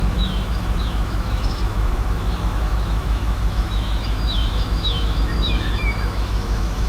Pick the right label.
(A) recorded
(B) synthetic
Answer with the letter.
B